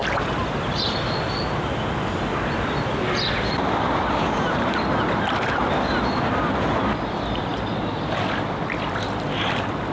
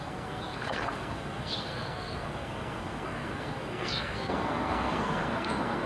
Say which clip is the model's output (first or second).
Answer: second